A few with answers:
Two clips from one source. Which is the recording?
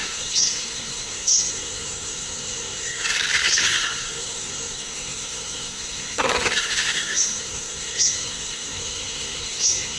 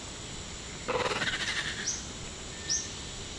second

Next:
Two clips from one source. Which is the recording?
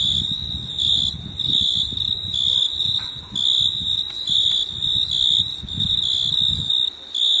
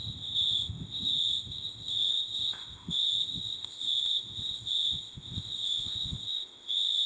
first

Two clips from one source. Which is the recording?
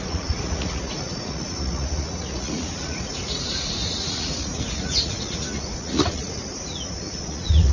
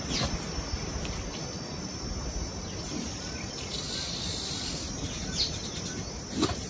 second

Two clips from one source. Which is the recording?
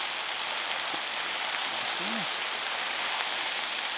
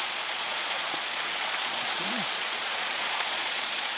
first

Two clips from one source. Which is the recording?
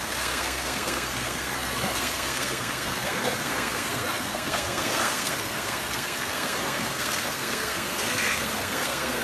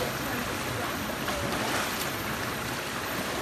second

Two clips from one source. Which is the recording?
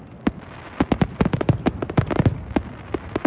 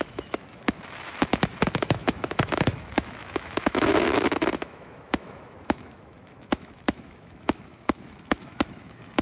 first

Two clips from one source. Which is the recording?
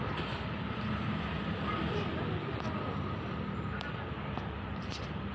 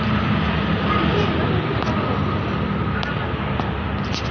second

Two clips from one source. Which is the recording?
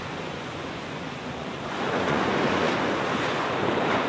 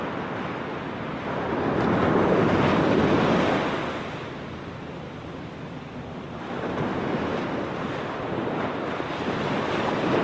second